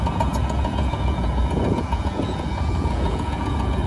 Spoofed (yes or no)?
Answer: yes